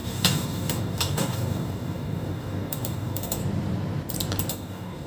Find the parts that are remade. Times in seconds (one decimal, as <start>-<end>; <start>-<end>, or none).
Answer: 0.0-3.4; 4.5-5.1